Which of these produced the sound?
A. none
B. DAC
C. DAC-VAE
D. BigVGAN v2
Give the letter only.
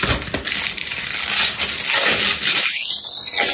A